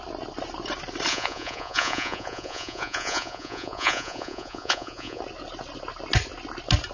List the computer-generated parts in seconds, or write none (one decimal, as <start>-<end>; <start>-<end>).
1.1-5.2